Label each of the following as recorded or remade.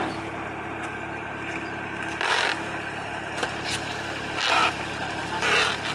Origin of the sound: recorded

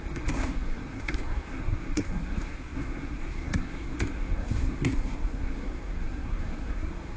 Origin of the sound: remade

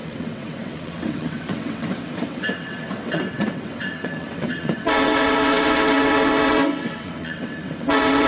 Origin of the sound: remade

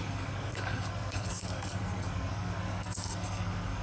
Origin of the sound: remade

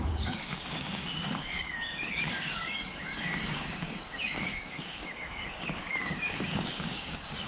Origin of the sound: remade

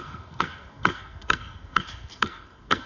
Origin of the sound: remade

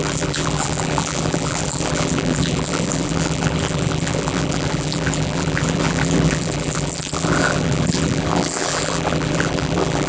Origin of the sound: remade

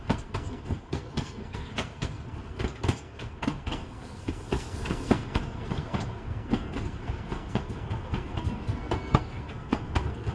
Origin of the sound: remade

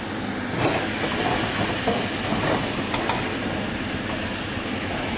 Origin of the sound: recorded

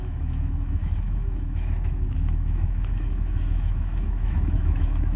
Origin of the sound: remade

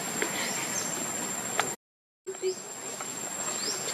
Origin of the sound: recorded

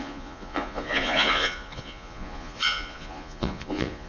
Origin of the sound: remade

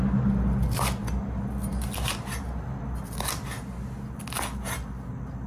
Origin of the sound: recorded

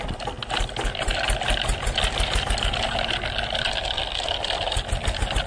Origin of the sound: recorded